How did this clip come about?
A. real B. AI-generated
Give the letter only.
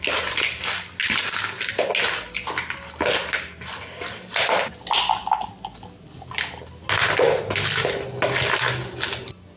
A